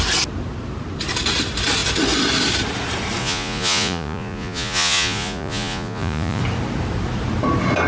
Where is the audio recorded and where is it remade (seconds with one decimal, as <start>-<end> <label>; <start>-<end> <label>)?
0.0-3.2 recorded; 3.2-6.4 remade; 6.4-7.9 recorded